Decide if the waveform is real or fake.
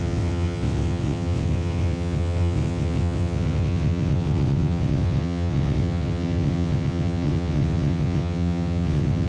fake